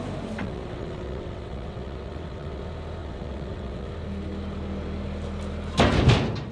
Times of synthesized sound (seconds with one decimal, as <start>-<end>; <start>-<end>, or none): 0.4-2.6; 3.0-3.9